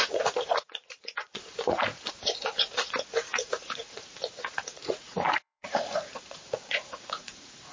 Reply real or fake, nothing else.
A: fake